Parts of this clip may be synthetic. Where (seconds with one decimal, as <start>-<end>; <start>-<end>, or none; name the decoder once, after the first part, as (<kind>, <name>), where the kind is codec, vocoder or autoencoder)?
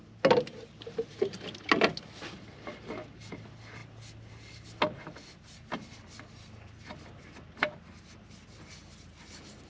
none